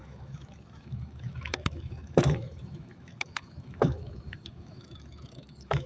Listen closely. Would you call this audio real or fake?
fake